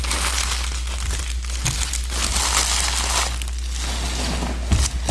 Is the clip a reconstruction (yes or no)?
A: no